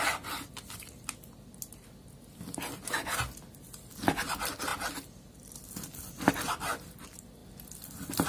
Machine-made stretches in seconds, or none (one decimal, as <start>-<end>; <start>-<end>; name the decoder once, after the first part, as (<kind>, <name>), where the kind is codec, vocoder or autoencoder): none